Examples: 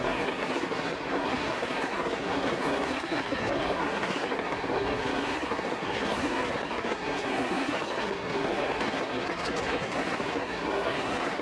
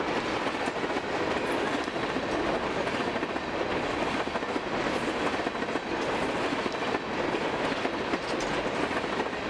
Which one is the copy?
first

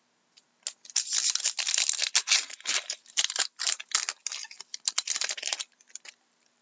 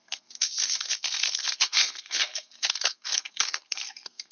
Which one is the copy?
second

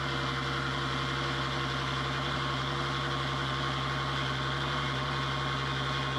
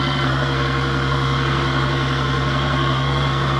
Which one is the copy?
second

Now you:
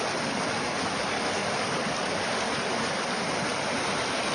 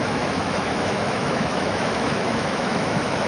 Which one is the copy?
second